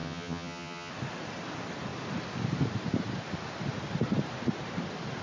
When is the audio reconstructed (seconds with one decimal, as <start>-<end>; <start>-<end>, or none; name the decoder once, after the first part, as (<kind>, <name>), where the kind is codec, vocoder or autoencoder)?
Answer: 0.0-0.9 (vocoder, HiFi-GAN)